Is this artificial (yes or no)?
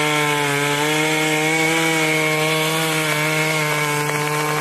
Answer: no